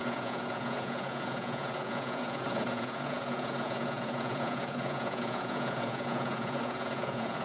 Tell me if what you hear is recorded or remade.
remade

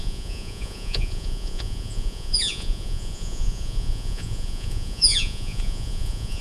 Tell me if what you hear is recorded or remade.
remade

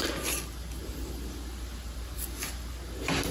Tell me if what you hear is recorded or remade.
recorded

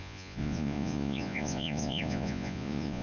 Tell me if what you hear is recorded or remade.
remade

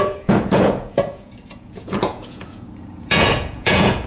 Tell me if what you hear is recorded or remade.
remade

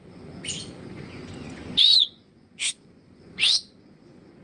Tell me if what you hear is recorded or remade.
remade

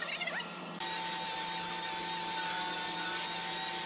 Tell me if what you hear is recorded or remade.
recorded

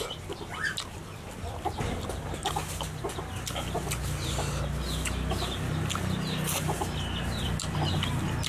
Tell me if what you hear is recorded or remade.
recorded